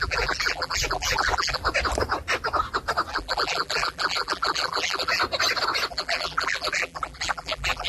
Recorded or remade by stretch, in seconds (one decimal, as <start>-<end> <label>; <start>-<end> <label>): 0.0-1.6 remade; 1.6-3.1 recorded; 3.1-5.2 remade; 5.2-5.9 recorded; 5.9-7.9 remade